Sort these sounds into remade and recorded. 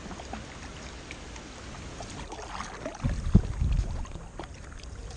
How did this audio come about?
recorded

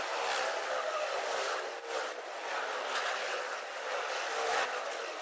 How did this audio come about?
recorded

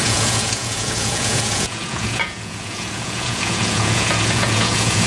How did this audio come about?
remade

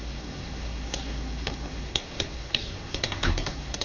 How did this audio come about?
remade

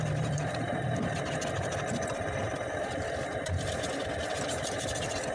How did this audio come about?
remade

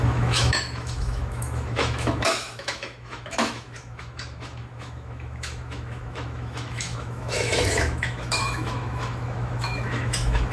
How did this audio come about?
remade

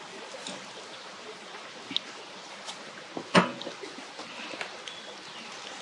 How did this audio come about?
recorded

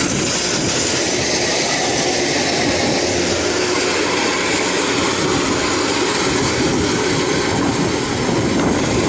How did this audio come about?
recorded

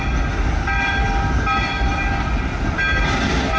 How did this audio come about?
recorded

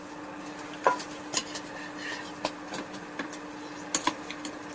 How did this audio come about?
recorded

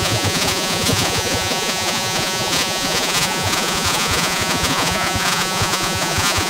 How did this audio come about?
remade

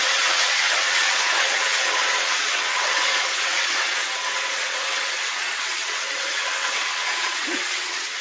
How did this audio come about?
remade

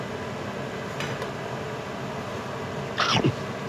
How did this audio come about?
recorded